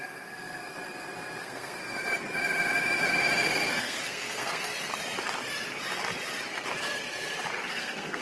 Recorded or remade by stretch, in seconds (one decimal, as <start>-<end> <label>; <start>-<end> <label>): 0.0-0.6 remade; 0.6-1.4 recorded; 1.4-1.8 remade; 1.8-3.8 recorded; 3.8-4.7 remade; 4.7-7.7 recorded; 7.7-8.2 remade